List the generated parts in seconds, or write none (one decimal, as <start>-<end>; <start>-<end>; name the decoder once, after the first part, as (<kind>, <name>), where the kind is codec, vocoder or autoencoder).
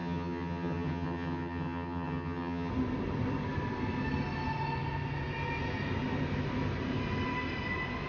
0.0-2.7 (vocoder, HiFi-GAN)